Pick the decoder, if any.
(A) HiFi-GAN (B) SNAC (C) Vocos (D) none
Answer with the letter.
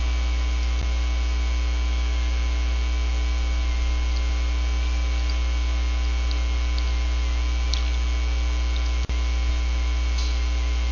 D